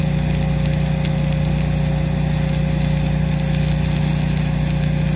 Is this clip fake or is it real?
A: real